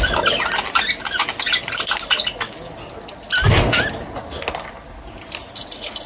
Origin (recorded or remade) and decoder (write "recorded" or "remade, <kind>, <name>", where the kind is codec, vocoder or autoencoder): recorded